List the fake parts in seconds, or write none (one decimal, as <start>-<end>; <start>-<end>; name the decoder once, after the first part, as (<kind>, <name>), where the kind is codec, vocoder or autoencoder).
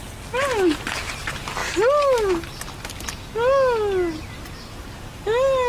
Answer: none